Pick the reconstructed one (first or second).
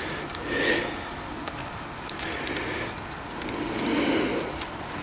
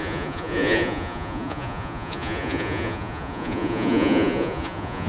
second